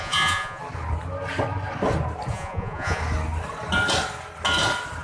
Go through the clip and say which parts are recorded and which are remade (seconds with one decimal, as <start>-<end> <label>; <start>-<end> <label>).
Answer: 0.0-0.6 remade; 0.6-2.3 recorded; 2.3-3.0 remade; 3.0-5.0 recorded